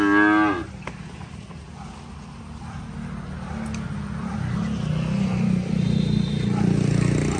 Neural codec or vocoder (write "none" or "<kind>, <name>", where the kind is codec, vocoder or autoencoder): none